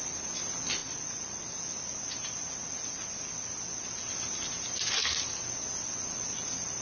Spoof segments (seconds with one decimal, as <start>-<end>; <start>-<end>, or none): none